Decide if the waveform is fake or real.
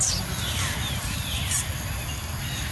real